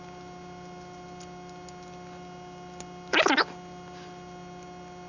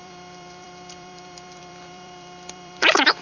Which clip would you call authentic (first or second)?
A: first